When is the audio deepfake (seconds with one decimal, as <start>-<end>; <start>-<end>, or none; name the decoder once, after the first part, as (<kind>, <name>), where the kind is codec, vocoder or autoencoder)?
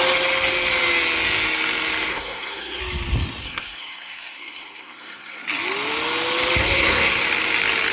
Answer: 2.1-2.8 (codec, SNAC); 3.4-5.4; 6.6-7.2